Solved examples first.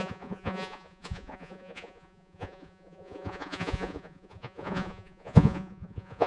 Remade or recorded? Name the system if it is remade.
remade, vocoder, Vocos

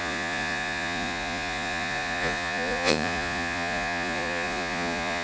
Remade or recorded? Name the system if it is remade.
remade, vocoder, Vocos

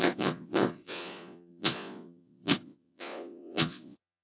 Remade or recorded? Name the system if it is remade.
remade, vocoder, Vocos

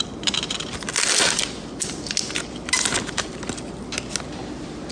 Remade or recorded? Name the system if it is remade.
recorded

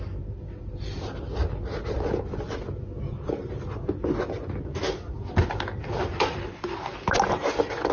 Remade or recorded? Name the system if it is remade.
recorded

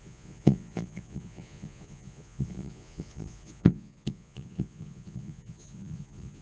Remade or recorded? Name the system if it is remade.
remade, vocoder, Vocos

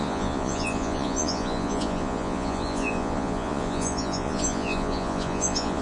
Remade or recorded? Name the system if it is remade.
remade, vocoder, Vocos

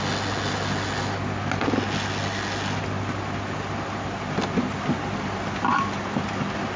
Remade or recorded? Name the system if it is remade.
recorded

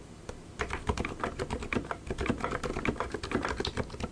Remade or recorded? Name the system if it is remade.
recorded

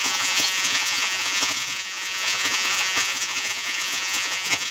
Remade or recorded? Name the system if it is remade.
remade, vocoder, Vocos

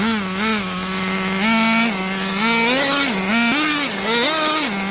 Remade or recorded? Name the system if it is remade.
recorded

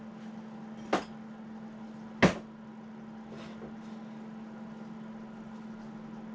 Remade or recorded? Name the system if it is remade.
recorded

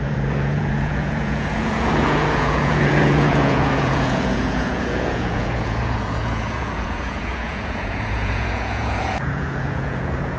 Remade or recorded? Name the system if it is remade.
remade, vocoder, Vocos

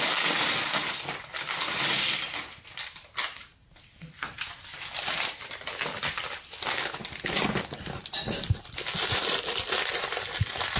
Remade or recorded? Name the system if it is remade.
recorded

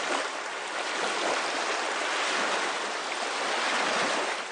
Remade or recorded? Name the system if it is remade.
recorded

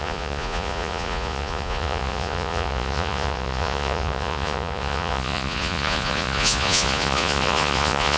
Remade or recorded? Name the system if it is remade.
remade, vocoder, Vocos